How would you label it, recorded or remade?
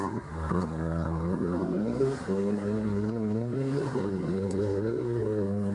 remade